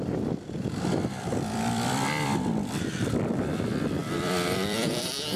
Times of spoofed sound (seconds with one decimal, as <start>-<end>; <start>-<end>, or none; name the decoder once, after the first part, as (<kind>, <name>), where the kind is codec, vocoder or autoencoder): 0.0-5.4 (vocoder, BigVGAN v2)

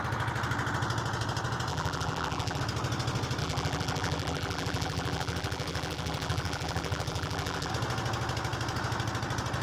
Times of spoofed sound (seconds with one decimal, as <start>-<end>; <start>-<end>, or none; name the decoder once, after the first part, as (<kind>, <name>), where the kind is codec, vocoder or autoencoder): 1.7-2.6 (vocoder, BigVGAN v2); 3.4-7.7